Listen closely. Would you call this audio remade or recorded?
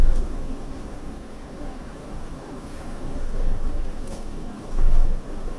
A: remade